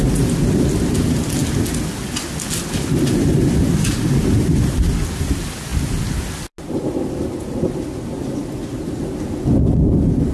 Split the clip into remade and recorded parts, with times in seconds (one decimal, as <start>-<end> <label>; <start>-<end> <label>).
0.0-10.3 recorded